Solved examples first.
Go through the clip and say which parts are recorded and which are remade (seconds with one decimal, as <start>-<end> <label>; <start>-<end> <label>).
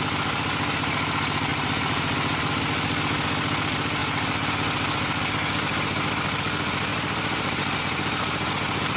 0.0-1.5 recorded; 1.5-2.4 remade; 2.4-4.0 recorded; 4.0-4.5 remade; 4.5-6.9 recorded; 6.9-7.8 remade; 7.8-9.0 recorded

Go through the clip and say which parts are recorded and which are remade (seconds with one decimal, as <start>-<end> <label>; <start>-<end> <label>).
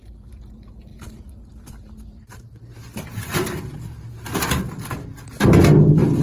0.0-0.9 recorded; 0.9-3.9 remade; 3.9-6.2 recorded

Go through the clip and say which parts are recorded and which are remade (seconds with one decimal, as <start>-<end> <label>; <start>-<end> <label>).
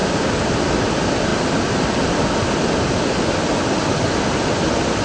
0.0-1.3 remade; 1.3-4.3 recorded; 4.3-5.0 remade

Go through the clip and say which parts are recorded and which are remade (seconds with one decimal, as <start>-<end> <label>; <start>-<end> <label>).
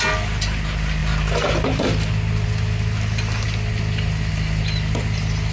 0.0-5.5 recorded